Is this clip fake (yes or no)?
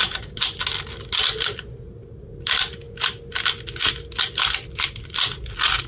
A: no